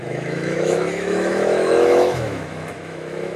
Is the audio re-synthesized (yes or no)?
yes